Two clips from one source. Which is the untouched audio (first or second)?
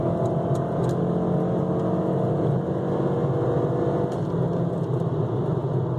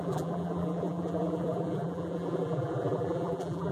first